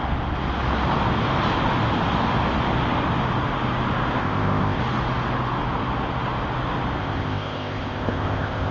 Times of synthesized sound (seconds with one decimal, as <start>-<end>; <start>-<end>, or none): 4.2-4.8; 7.0-8.7